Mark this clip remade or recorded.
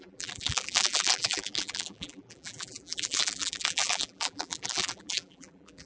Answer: remade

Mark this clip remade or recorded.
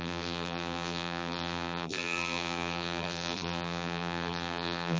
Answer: remade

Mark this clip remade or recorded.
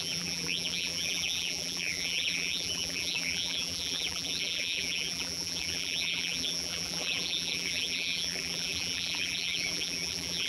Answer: remade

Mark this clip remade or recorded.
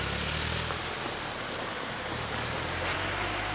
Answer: recorded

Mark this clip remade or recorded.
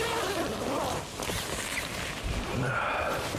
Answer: recorded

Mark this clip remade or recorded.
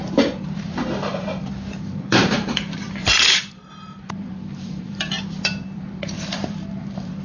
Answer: remade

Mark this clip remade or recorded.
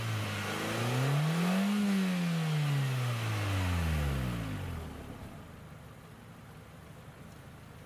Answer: recorded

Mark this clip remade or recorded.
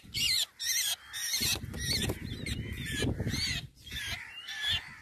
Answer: remade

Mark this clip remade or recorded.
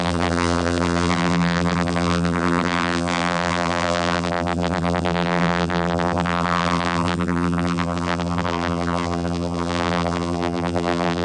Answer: remade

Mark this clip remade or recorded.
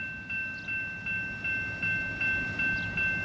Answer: recorded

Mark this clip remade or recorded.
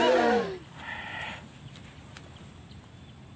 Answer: recorded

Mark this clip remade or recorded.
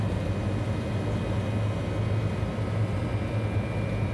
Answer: recorded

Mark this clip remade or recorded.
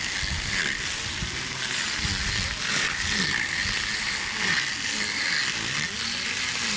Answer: recorded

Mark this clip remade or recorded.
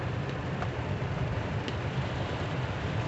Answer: remade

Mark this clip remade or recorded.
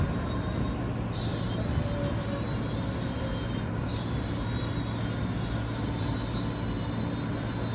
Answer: recorded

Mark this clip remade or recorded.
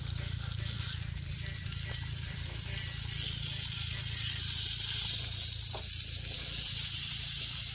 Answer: remade